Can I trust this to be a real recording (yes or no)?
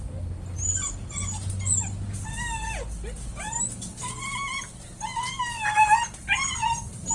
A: yes